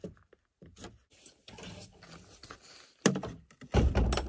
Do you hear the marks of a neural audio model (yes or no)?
no